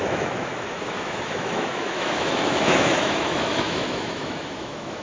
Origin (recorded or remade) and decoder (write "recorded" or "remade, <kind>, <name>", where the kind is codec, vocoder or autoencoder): remade, autoencoder, DAC-VAE